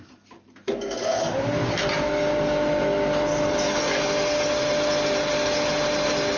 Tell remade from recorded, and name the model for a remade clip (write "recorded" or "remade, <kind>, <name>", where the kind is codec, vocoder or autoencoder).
recorded